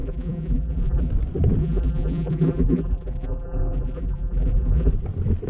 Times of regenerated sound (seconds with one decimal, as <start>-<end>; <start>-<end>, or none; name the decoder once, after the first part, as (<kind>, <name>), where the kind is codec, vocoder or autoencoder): 0.0-1.1 (vocoder, BigVGAN v2); 1.6-4.9